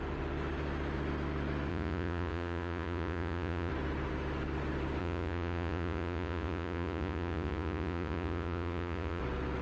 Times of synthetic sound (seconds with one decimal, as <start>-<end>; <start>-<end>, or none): 1.7-3.7; 5.0-9.2